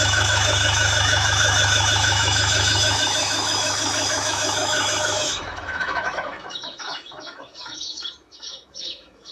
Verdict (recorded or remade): remade